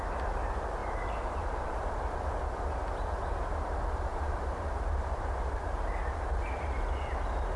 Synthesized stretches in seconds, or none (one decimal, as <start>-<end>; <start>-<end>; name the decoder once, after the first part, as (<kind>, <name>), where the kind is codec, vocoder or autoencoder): 0.8-2.4 (vocoder, BigVGAN v2); 4.1-5.7